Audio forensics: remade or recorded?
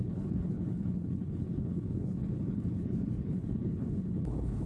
remade